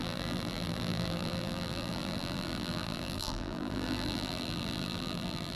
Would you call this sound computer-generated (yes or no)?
yes